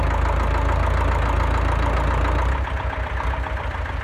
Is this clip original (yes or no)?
yes